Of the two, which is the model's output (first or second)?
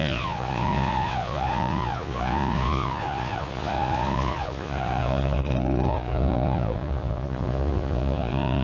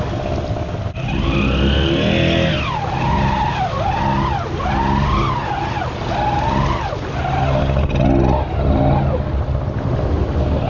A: first